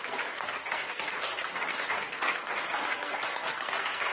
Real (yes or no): no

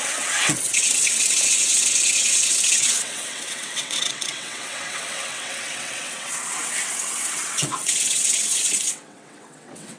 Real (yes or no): no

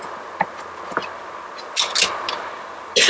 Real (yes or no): yes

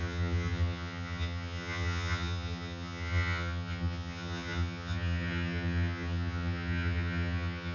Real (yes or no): no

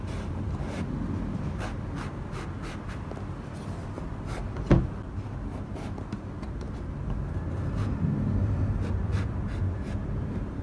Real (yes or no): yes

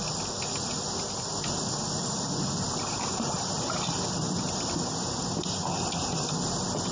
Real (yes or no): yes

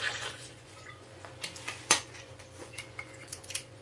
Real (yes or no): no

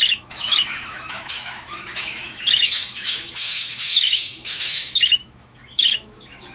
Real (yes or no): no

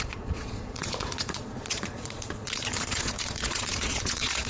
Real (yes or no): no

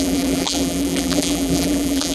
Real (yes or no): no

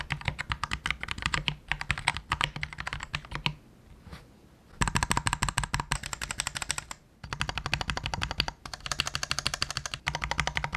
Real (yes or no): yes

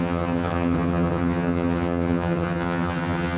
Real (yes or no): no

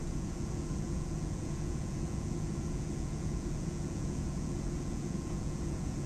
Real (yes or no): no